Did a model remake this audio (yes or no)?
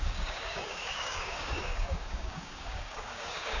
yes